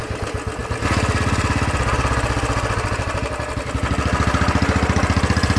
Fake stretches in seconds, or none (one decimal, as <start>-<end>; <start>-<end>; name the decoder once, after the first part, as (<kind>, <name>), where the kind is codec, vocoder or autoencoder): none